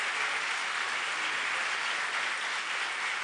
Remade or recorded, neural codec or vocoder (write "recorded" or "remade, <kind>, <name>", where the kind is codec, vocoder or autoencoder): recorded